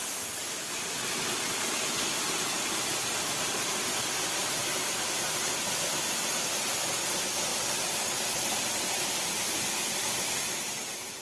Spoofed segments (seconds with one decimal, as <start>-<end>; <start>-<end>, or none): 0.0-0.7; 7.5-8.9